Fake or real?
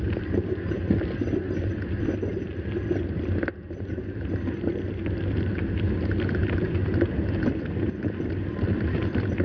real